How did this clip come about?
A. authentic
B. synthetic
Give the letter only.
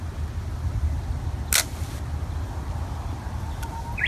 A